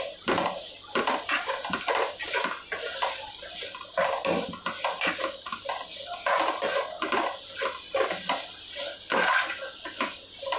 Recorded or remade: recorded